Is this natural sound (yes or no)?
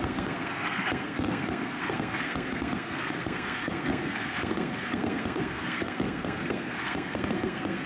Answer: no